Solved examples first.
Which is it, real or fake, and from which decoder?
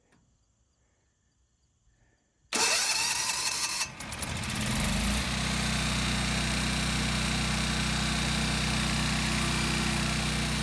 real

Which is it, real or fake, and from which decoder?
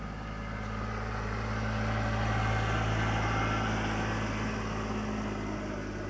real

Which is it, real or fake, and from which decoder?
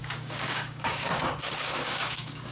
fake, codec, DAC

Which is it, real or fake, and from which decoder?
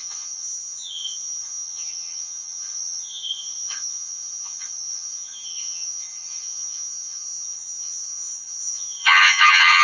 fake, vocoder, HiFi-GAN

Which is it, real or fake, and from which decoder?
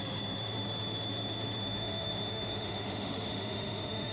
fake, autoencoder, DAC-VAE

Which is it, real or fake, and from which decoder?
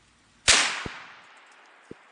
real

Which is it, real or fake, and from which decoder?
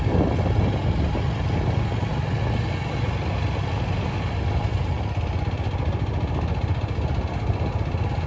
real